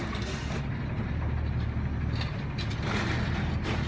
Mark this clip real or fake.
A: real